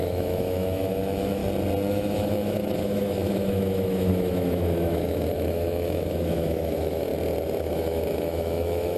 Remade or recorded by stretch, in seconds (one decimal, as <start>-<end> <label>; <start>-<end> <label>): 0.0-1.4 remade; 1.4-1.9 recorded; 1.9-7.1 remade; 7.1-7.6 recorded; 7.6-9.0 remade